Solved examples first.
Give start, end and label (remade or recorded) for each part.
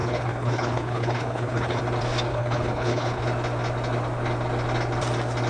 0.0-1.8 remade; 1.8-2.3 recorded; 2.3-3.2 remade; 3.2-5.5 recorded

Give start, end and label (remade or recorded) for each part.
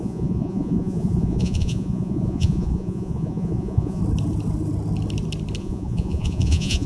0.0-4.0 remade; 4.0-5.6 recorded; 5.6-6.9 remade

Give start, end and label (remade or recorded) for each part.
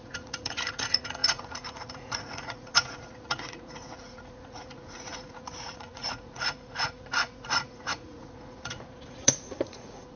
0.0-10.2 remade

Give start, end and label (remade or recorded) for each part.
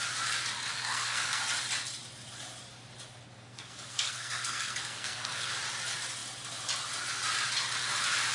0.0-0.7 recorded; 0.7-1.4 remade; 1.4-3.4 recorded; 3.4-5.5 remade; 5.5-8.3 recorded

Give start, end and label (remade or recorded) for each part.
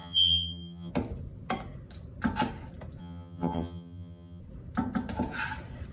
0.0-0.9 remade; 0.9-3.0 recorded; 3.0-4.4 remade; 4.4-5.9 recorded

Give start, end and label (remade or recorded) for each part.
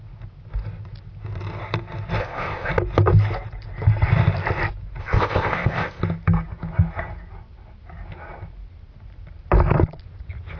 0.0-2.2 recorded; 2.2-2.7 remade; 2.7-5.0 recorded; 5.0-6.0 remade; 6.0-10.6 recorded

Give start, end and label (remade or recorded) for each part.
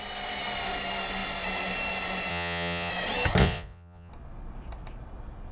0.0-2.3 recorded; 2.3-2.9 remade; 2.9-3.4 recorded; 3.4-4.1 remade; 4.1-5.5 recorded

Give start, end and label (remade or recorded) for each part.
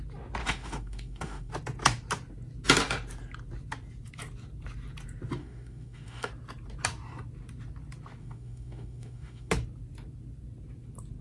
0.0-0.4 recorded; 0.4-1.5 remade; 1.5-5.4 recorded; 5.4-6.3 remade; 6.3-8.2 recorded; 8.2-9.5 remade; 9.5-11.2 recorded